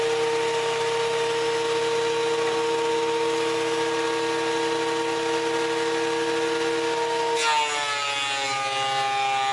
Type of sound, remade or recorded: recorded